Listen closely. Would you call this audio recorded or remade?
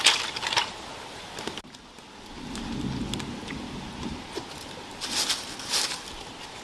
recorded